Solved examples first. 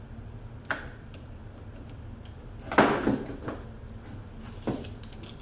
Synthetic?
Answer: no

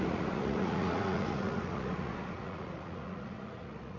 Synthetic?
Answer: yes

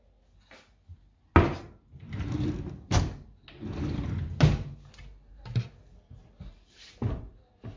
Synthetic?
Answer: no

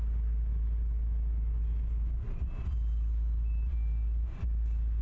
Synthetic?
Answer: no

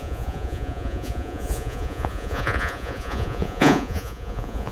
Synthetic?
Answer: yes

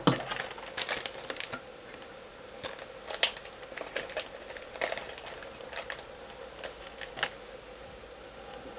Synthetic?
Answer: no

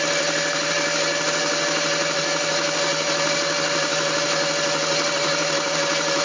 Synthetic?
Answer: no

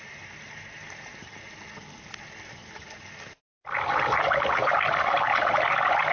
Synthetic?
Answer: no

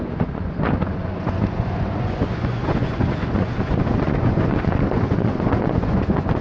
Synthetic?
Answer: yes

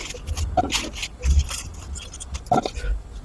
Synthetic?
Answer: no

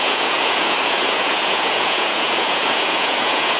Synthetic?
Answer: yes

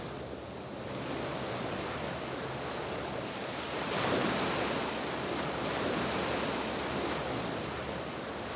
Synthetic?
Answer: no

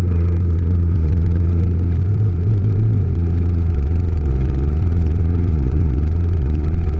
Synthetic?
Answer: yes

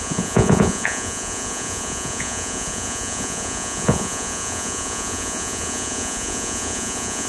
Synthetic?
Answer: yes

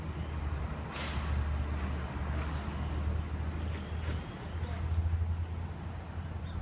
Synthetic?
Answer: no